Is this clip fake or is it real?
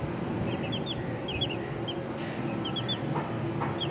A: real